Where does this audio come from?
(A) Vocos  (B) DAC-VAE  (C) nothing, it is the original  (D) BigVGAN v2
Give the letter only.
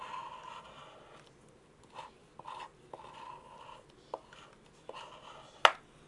C